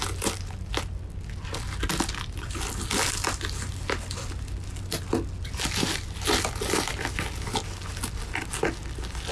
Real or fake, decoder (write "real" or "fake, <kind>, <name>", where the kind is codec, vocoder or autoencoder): real